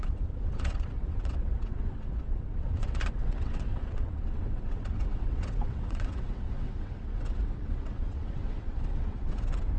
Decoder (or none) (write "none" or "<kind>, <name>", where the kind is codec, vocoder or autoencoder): vocoder, WaveNeXt